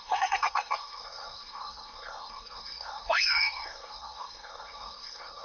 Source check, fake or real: fake